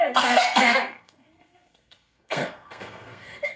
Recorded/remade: remade